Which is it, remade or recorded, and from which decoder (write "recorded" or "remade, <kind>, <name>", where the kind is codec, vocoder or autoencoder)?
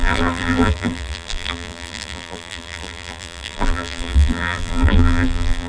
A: remade, vocoder, BigVGAN v2